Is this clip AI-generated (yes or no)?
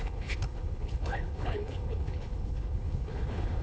yes